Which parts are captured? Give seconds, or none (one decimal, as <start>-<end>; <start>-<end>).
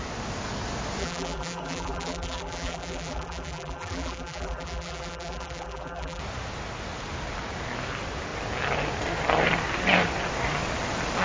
0.0-1.0; 6.2-11.2